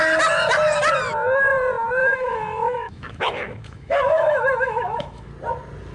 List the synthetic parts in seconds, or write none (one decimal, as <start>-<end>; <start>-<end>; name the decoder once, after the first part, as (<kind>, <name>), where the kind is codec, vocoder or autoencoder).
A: 2.0-5.3 (autoencoder, DAC-VAE)